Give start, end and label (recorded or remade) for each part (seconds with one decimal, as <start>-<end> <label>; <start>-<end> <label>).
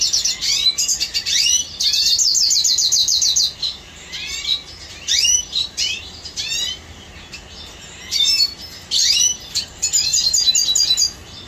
0.0-3.0 recorded; 3.0-7.1 remade; 7.1-11.5 recorded